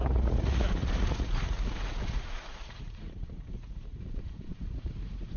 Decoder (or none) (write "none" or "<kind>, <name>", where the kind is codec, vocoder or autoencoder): vocoder, Vocos